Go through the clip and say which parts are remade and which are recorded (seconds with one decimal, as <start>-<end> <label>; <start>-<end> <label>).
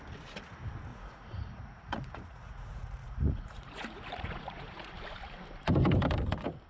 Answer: 0.0-0.9 recorded; 0.9-4.9 remade; 4.9-6.7 recorded